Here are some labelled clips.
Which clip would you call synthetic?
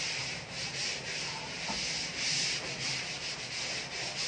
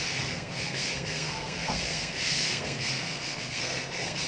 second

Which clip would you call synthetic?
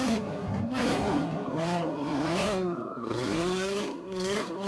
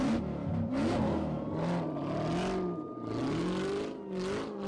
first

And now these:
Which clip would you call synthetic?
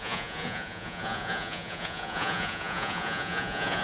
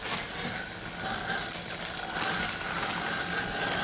first